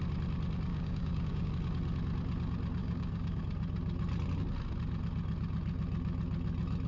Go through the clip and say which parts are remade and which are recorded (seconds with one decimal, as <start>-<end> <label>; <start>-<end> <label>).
0.0-0.7 recorded; 0.7-1.5 remade; 1.5-2.8 recorded; 2.8-3.4 remade; 3.4-6.9 recorded